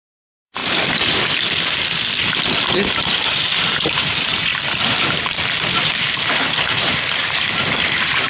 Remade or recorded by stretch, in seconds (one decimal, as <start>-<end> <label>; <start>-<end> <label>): 0.0-0.6 remade; 0.6-3.1 recorded; 3.1-4.5 remade; 4.5-5.7 recorded; 5.7-8.3 remade